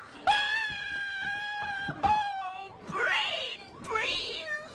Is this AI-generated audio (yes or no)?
yes